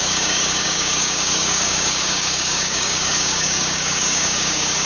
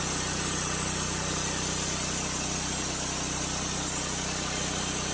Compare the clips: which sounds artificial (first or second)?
first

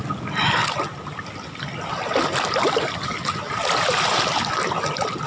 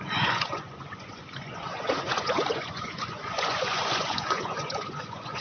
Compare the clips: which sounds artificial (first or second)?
second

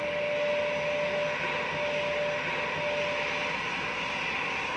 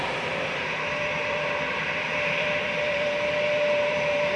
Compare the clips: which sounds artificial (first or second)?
second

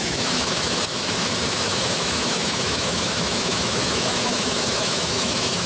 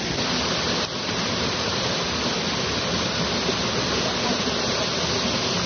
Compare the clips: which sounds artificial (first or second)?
first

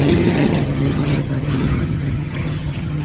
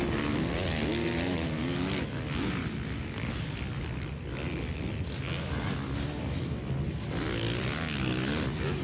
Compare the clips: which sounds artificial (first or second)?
first